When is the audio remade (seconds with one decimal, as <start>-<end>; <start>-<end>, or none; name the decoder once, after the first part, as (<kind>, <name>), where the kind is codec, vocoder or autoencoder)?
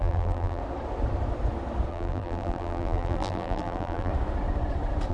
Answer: 0.0-0.6 (vocoder, BigVGAN v2); 1.9-4.1